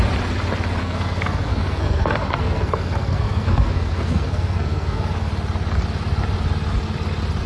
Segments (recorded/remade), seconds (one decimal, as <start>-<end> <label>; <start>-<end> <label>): 0.0-0.8 recorded; 0.8-5.3 remade; 5.3-7.5 recorded